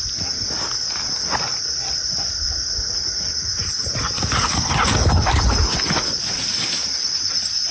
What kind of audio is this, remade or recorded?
recorded